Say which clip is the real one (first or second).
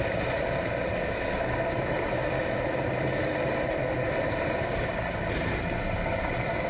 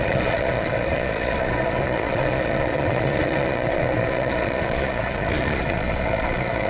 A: first